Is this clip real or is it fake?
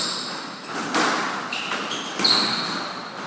real